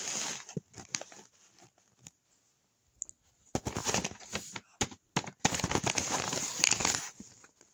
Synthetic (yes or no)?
no